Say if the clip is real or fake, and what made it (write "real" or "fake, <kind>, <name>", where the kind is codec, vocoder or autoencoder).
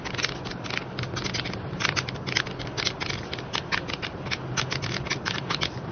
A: real